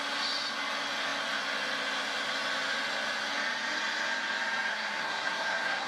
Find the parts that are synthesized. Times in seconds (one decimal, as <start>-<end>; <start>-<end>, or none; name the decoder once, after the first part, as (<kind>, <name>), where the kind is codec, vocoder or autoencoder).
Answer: 4.7-5.9 (codec, SNAC)

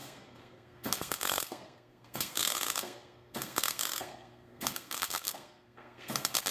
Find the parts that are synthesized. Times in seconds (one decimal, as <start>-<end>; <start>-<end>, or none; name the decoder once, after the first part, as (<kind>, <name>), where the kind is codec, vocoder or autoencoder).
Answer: 0.0-6.5 (codec, SNAC)

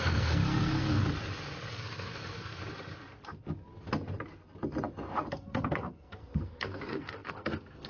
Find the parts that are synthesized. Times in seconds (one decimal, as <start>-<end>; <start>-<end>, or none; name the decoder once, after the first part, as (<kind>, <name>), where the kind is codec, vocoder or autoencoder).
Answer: 0.0-1.0 (codec, SNAC); 1.7-2.6; 5.3-7.9